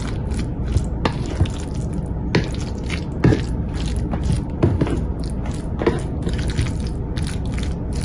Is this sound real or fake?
real